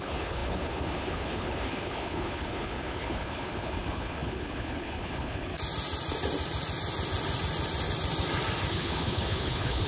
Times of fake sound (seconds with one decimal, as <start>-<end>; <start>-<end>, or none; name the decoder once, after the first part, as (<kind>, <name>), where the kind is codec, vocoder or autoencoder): 0.0-5.5 (codec, HILCodec); 8.7-9.9